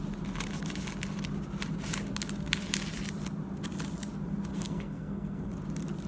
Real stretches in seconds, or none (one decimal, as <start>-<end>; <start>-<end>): 0.0-4.5; 5.5-6.1

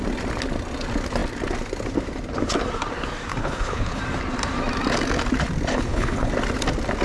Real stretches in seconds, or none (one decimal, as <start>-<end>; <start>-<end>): 0.0-3.3; 4.0-5.7; 6.3-7.0